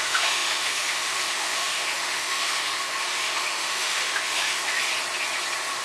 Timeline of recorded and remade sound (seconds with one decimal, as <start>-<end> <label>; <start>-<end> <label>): 0.0-4.8 remade; 4.8-5.8 recorded